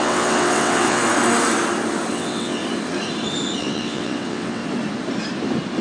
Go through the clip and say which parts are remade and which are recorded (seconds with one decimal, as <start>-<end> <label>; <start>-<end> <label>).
0.0-1.0 remade; 1.0-2.1 recorded; 2.1-2.6 remade; 2.6-3.6 recorded; 3.6-4.6 remade; 4.6-5.8 recorded